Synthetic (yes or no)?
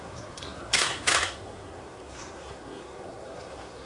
yes